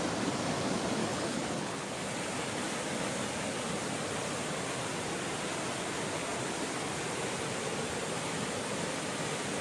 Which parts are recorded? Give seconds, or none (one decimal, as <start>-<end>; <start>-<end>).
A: 0.0-1.0; 1.9-9.6